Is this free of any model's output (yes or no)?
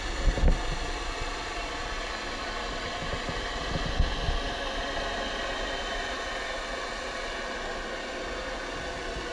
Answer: yes